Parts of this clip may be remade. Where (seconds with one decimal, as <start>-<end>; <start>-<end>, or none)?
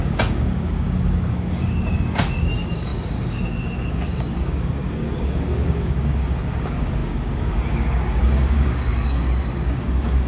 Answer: 0.0-10.3